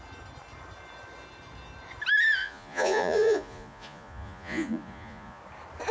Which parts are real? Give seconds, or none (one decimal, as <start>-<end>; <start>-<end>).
0.0-2.4; 5.4-5.9